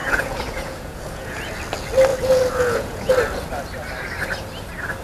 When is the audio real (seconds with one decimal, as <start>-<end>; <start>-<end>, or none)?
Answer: 1.4-2.1; 3.1-5.0